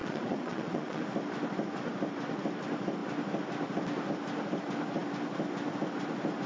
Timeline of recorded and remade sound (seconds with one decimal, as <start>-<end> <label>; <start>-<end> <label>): 0.0-1.0 remade; 1.0-6.5 recorded